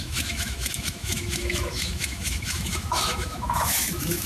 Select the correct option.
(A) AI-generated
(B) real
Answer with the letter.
A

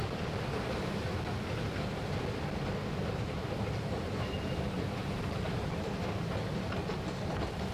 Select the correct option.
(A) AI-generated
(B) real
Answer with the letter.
B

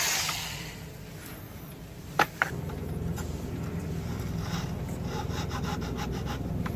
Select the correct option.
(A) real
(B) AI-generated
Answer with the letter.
A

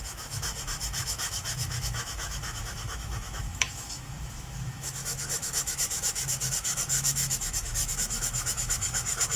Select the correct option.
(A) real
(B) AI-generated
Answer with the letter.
B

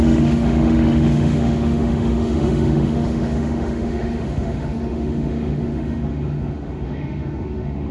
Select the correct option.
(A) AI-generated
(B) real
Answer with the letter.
A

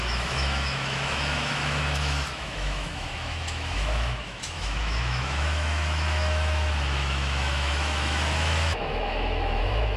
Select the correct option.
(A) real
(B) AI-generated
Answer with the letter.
B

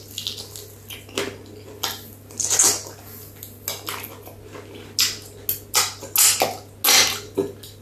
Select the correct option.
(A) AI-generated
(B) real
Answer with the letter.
B